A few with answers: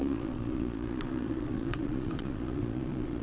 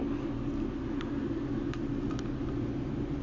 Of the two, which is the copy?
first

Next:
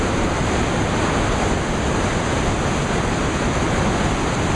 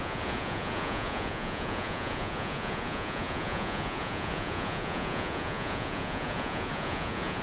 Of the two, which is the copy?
second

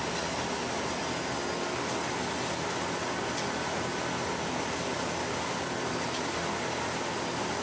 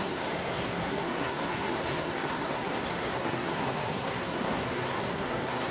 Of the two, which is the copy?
second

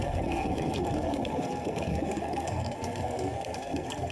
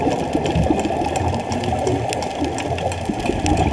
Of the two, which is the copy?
first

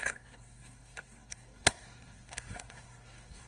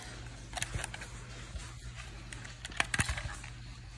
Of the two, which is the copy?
first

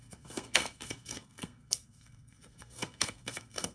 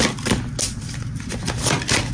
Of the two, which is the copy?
first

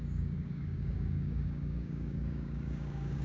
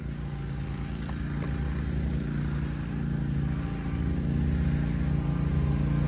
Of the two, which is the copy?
first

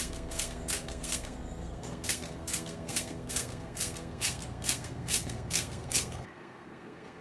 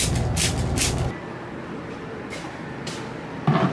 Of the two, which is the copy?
first